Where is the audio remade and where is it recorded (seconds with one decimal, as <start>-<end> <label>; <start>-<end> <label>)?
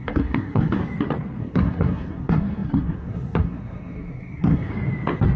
0.0-0.8 remade; 0.8-1.4 recorded; 1.4-4.7 remade; 4.7-5.4 recorded